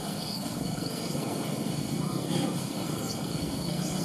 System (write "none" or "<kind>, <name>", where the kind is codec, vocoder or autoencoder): codec, SNAC